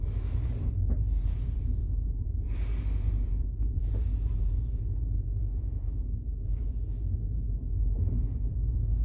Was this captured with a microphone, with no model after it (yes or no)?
no